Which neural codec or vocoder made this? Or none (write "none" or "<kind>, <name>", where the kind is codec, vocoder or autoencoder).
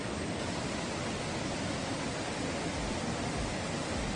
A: none